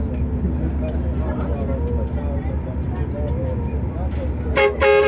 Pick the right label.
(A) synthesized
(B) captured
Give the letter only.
B